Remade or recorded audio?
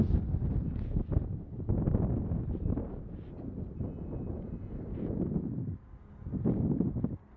recorded